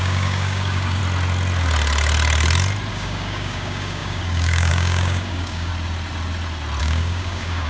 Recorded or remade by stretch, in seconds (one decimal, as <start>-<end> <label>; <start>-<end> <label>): 0.0-1.0 remade; 1.0-2.9 recorded; 2.9-5.7 remade; 5.7-6.8 recorded; 6.8-7.7 remade